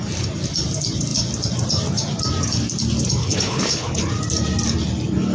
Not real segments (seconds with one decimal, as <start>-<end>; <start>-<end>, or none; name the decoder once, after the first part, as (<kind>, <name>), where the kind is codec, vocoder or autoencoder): 3.2-4.0 (codec, HILCodec)